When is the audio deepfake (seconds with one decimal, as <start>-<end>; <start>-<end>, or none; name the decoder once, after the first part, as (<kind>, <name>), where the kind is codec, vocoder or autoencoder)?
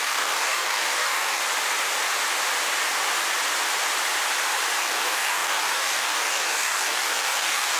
0.0-1.4 (codec, DAC); 4.8-7.8